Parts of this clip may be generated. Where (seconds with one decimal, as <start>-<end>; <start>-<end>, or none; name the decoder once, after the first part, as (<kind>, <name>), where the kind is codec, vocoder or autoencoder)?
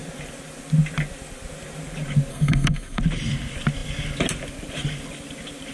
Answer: 2.3-3.0 (codec, SNAC)